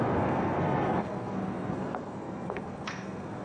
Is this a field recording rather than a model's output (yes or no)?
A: no